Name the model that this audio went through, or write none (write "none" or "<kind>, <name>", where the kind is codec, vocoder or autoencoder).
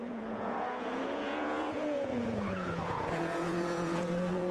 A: vocoder, Vocos